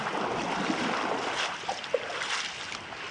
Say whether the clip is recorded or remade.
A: recorded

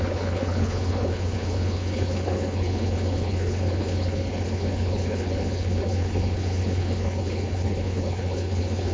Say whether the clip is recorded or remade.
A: remade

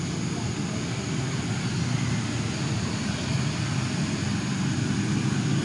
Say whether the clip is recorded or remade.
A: recorded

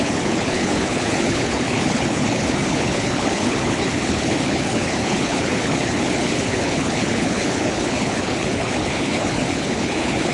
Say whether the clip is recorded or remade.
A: remade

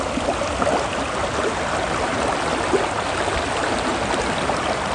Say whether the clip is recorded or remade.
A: recorded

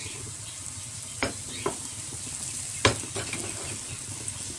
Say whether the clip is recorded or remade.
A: recorded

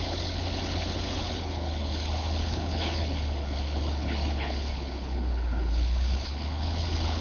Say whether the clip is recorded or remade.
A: remade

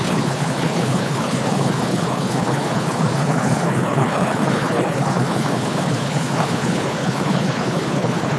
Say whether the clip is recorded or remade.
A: remade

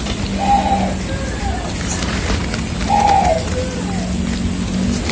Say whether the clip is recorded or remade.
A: recorded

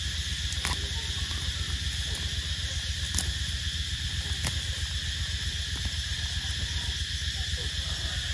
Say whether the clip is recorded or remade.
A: recorded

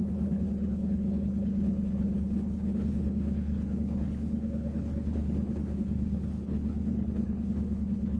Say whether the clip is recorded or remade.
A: remade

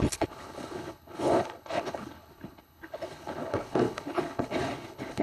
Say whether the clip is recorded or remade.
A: remade